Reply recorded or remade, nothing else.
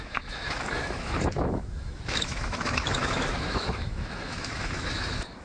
remade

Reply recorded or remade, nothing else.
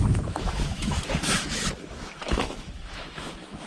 remade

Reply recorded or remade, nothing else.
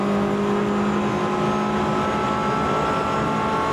recorded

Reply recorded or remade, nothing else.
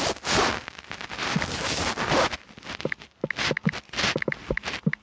recorded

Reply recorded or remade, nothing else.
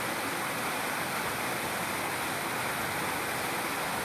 recorded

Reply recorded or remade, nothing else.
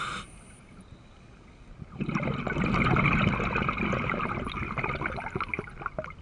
recorded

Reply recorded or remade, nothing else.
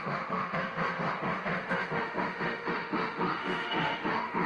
remade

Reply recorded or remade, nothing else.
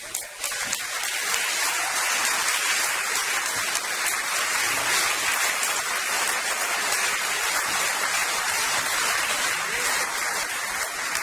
recorded